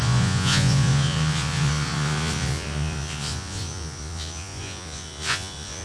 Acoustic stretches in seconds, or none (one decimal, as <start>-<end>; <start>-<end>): none